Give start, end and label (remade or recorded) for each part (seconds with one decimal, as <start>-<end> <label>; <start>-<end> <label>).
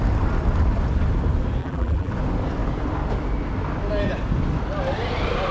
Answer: 0.0-1.6 recorded; 1.6-2.1 remade; 2.1-5.5 recorded